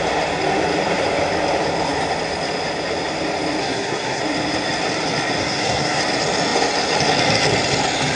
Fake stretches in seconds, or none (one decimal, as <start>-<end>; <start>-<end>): 3.6-4.2; 5.4-6.0